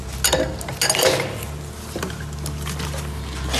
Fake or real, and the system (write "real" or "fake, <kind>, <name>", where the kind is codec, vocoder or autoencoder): real